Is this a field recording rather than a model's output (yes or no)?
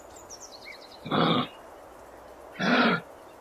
yes